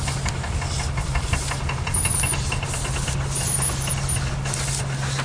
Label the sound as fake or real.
real